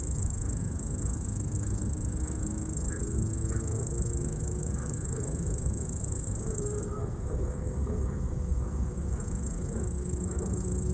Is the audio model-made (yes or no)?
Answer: yes